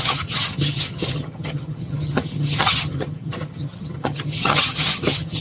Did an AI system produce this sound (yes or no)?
yes